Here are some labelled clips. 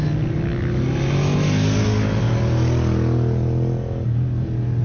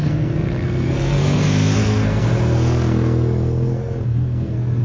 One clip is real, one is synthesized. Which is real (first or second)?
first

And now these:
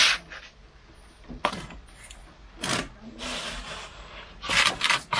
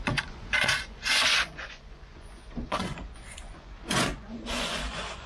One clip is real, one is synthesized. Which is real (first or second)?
first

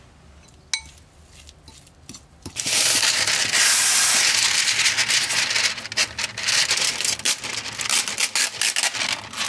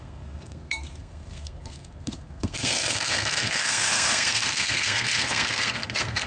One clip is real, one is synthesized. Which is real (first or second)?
first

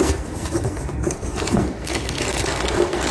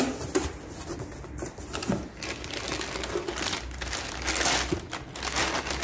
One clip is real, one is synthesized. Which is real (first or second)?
second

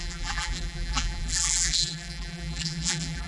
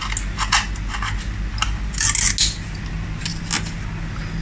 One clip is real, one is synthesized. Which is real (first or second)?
second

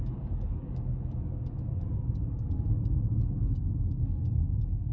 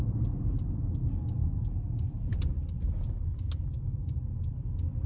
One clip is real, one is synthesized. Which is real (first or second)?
second